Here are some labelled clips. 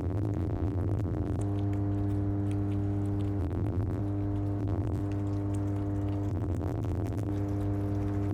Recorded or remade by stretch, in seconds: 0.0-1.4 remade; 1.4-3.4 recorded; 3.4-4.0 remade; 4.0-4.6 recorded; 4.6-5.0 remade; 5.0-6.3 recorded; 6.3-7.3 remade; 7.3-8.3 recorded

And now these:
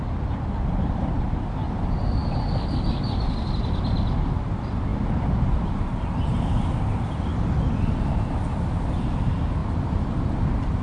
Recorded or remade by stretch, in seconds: 0.0-9.6 recorded; 9.6-10.3 remade; 10.3-10.8 recorded

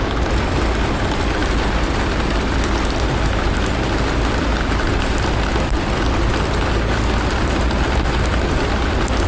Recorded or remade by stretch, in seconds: 0.0-9.3 recorded

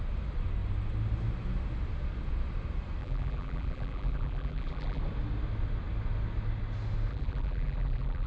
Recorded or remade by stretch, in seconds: 0.0-3.0 recorded; 3.0-5.0 remade; 5.0-7.1 recorded; 7.1-8.3 remade

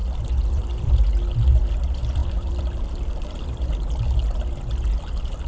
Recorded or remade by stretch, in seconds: 0.0-0.9 remade; 0.9-2.2 recorded; 2.2-4.0 remade; 4.0-5.5 recorded

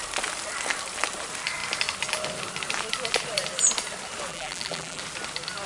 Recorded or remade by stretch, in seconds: 0.0-4.3 recorded; 4.3-5.0 remade; 5.0-5.7 recorded